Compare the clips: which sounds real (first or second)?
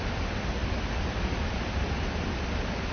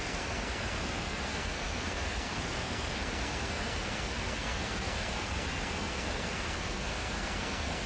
first